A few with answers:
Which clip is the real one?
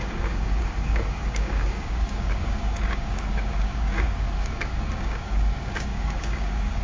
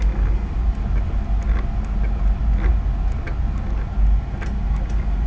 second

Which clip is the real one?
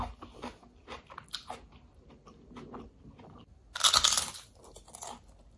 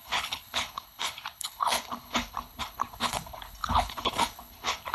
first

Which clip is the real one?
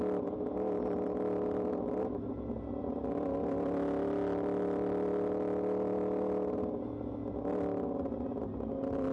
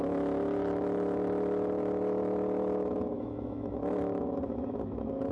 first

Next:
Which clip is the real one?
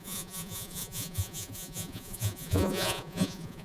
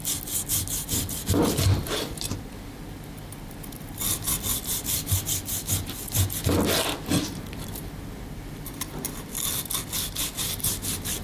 second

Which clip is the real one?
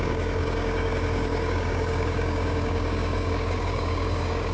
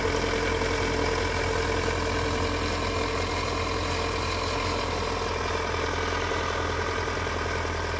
second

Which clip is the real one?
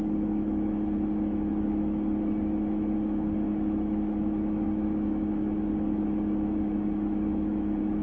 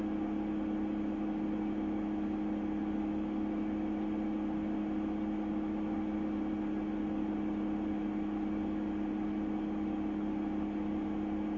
second